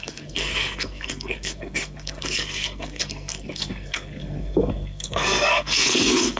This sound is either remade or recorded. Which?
remade